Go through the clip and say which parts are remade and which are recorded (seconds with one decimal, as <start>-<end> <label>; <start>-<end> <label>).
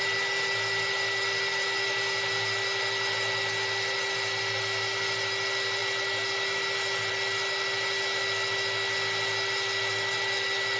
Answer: 0.0-10.8 recorded